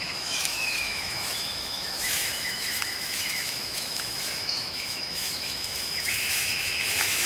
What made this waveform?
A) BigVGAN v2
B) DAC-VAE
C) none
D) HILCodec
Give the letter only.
B